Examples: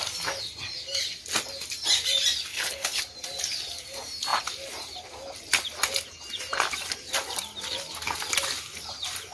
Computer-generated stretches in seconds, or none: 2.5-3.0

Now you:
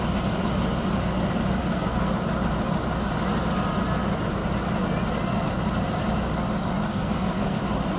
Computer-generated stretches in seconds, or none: 1.6-2.1; 6.9-7.6

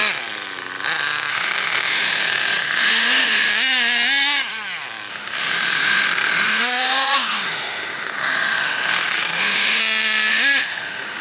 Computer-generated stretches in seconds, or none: 1.3-3.5; 5.1-9.8; 10.3-11.2